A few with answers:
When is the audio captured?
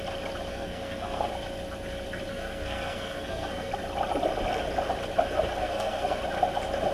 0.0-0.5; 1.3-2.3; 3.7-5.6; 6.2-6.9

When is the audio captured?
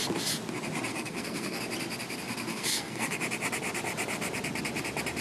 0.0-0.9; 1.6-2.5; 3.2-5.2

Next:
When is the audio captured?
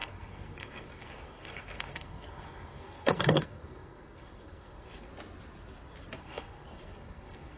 5.1-6.2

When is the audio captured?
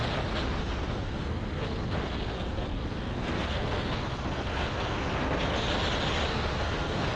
0.0-0.6; 5.5-6.3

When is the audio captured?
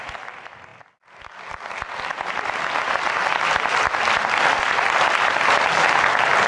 0.0-6.5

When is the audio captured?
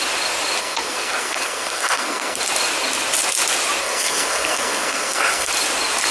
0.0-0.6; 2.4-3.8; 5.5-6.1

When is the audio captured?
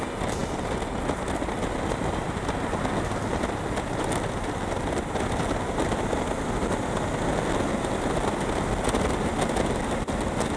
0.0-10.6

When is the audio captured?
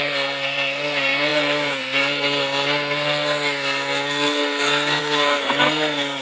none